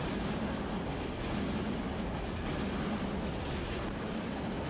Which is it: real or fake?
real